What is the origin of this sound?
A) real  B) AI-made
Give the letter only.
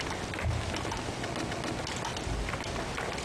A